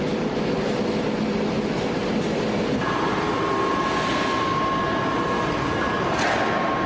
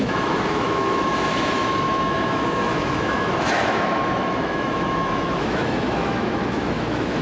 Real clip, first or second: first